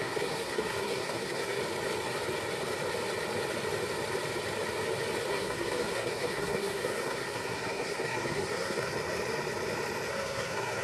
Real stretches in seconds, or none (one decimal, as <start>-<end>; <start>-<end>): 1.6-5.3; 8.9-10.1